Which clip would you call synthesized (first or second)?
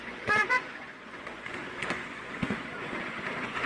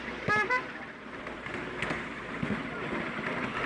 first